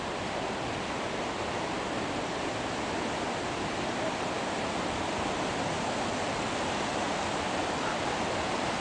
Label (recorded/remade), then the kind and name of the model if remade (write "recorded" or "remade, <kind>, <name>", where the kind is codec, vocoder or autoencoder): recorded